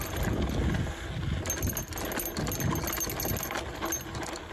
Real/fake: real